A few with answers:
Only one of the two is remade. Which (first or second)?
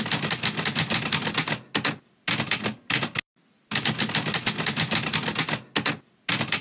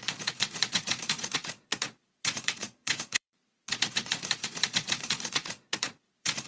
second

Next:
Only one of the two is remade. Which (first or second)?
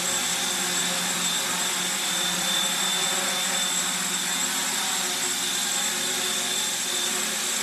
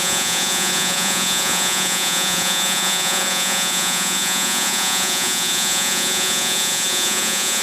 second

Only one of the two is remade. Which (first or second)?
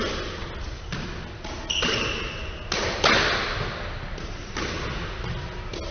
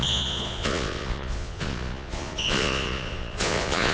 second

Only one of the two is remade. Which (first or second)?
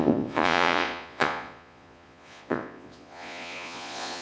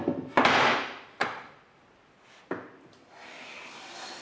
first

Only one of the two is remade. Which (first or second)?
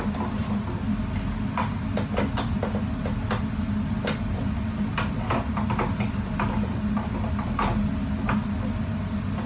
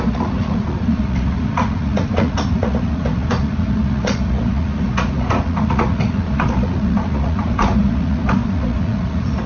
second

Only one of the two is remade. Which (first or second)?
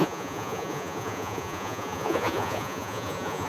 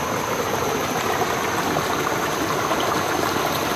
first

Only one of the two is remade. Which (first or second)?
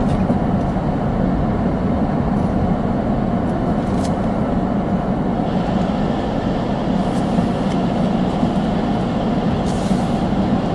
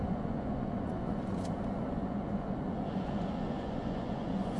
second